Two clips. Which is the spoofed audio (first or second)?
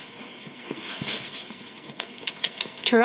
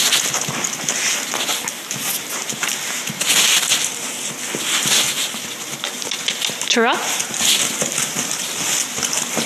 first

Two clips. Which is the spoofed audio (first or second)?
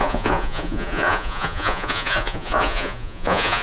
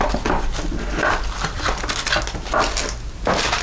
first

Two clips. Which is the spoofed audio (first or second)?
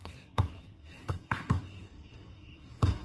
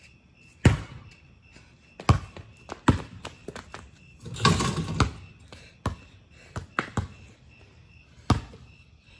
first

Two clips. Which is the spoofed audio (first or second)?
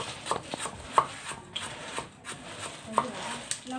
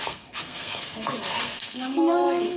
second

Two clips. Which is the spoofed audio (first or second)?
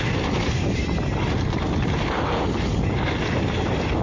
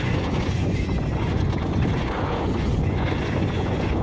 second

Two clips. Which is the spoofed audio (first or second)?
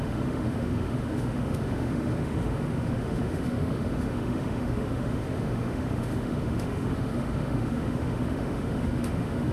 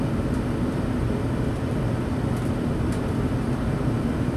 first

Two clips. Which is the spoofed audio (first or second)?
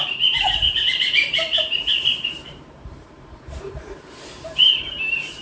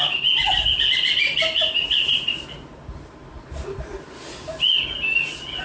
first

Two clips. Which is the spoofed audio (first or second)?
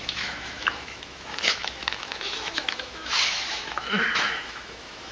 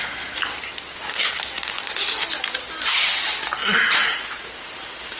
first